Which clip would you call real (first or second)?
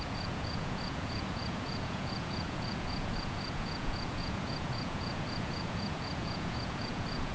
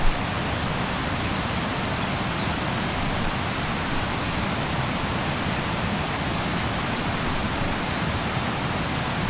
second